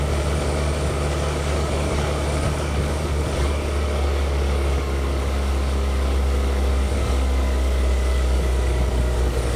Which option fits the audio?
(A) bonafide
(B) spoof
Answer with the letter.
B